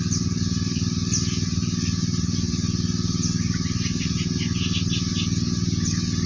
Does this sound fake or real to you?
real